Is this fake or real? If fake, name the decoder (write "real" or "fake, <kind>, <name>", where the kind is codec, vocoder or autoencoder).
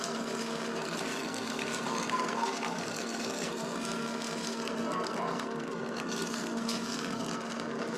fake, codec, SNAC